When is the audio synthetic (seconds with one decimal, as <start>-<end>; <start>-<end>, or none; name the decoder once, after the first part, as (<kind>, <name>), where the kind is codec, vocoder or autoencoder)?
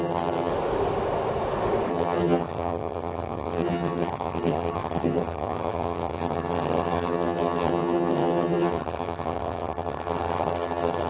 0.0-0.5 (vocoder, HiFi-GAN); 1.9-11.1